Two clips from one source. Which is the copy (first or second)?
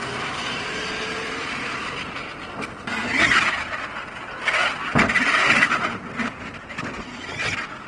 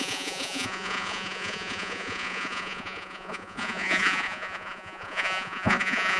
second